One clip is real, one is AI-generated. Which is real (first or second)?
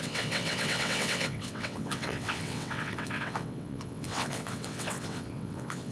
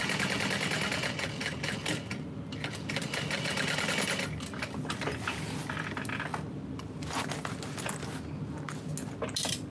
second